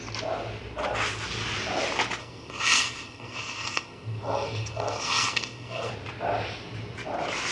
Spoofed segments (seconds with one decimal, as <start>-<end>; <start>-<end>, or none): 2.2-5.9